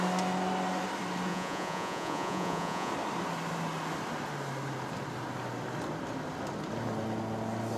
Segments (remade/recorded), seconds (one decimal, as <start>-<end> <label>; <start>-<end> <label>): 0.0-1.3 recorded; 1.3-2.9 remade; 2.9-7.8 recorded